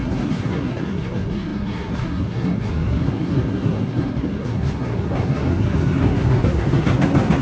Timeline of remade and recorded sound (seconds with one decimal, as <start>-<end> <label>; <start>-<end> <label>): 0.0-7.4 remade